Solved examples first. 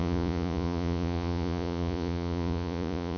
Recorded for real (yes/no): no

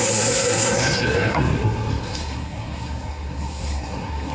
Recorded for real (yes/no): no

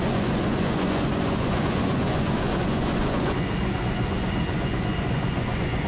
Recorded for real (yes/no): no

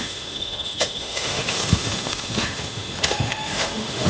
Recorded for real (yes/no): no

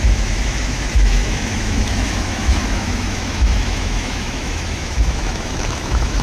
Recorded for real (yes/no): no